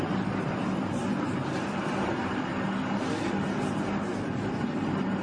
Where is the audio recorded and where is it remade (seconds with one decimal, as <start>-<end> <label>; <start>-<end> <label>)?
0.0-1.4 remade; 1.4-2.1 recorded; 2.1-2.5 remade; 2.5-4.8 recorded; 4.8-5.2 remade